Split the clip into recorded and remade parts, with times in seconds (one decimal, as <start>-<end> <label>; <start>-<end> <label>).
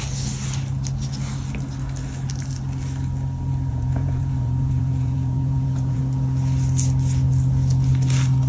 0.0-3.7 recorded; 3.7-6.0 remade; 6.0-8.5 recorded